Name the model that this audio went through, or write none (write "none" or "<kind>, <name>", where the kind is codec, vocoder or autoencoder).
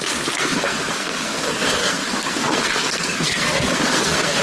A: codec, SNAC